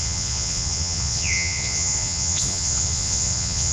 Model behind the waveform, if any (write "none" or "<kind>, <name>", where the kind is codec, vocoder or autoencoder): vocoder, Vocos